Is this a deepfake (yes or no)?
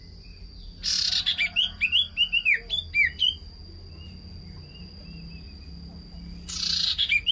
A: no